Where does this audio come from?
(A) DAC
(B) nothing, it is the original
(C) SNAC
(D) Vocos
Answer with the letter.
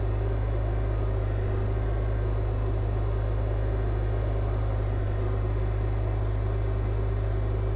B